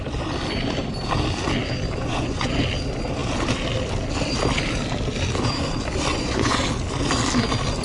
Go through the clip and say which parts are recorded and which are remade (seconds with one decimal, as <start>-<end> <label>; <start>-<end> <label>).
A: 0.0-2.0 recorded; 2.0-2.6 remade; 2.6-6.1 recorded; 6.1-6.6 remade; 6.6-7.8 recorded